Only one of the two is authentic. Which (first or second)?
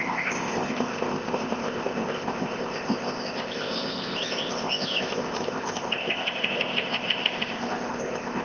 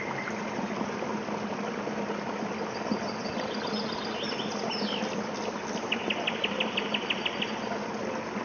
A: second